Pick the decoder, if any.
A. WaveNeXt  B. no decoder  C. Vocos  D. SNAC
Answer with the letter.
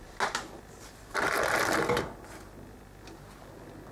B